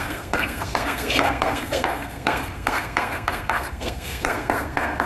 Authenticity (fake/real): fake